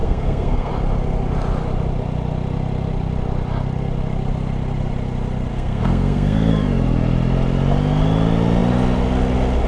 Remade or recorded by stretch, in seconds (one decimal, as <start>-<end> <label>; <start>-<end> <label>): 0.0-0.7 remade; 0.7-5.5 recorded; 5.5-6.5 remade; 6.5-9.7 recorded